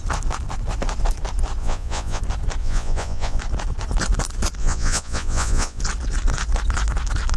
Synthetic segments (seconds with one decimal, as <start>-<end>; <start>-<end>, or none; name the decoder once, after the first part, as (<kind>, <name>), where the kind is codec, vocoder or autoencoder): 1.6-2.2 (vocoder, Vocos); 2.6-3.4; 4.6-5.8